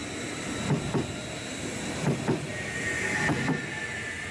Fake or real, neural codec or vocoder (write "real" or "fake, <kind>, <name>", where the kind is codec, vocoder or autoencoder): real